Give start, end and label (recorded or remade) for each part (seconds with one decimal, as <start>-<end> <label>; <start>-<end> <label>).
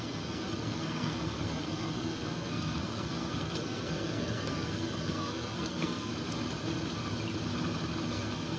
0.0-6.1 remade; 6.1-8.1 recorded; 8.1-8.6 remade